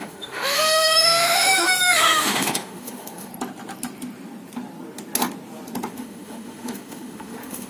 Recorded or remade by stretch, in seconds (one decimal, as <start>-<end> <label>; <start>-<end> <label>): 0.0-3.3 remade; 3.3-5.9 recorded; 5.9-7.7 remade